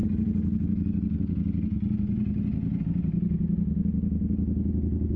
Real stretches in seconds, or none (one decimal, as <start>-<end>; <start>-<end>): 0.0-5.2